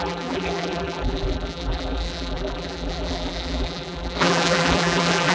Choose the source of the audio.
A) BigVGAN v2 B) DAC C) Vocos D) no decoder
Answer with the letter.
A